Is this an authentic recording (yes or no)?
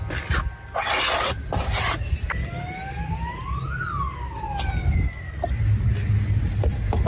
yes